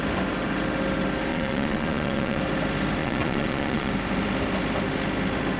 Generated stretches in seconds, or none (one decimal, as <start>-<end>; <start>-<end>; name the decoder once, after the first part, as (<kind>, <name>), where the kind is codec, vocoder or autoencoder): 1.3-2.4 (vocoder, Vocos); 3.0-3.9